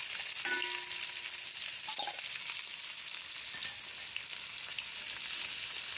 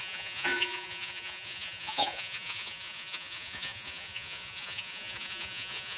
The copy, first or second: second